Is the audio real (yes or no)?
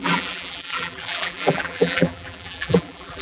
no